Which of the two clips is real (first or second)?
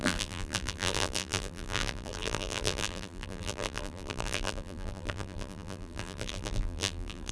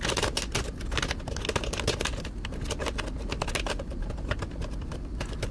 second